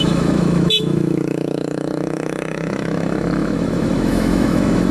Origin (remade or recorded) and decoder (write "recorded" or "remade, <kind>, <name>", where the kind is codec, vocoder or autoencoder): remade, autoencoder, DAC-VAE